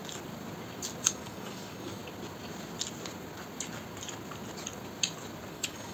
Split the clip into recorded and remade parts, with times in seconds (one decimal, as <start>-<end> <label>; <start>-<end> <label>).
0.0-1.1 recorded; 1.1-2.0 remade; 2.0-5.5 recorded; 5.5-5.9 remade